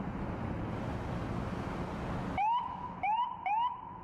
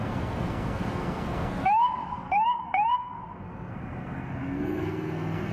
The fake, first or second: second